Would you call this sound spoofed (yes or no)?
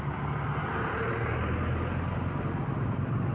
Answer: no